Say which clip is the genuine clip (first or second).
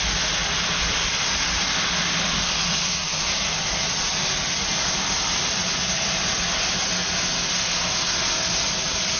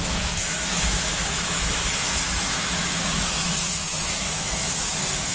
first